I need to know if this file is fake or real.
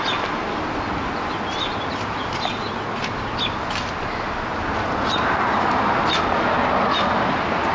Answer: real